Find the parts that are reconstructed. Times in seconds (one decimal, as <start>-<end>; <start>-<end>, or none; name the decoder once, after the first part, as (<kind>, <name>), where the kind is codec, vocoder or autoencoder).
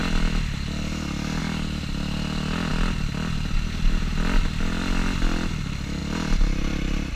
none